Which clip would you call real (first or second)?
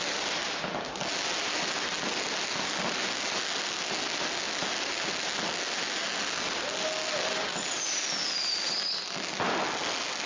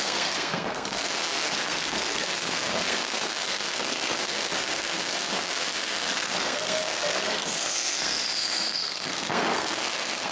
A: first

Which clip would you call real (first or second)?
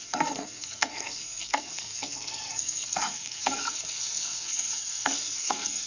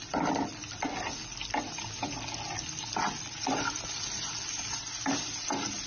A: second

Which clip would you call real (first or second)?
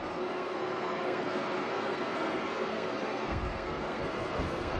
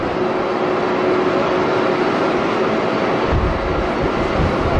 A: second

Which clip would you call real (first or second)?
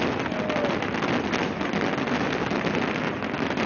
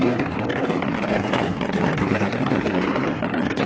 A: first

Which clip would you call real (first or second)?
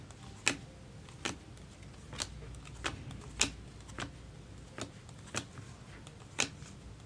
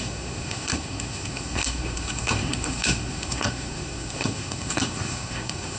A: first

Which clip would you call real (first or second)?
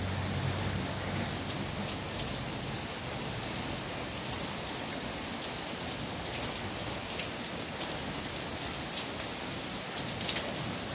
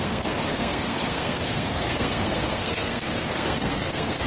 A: first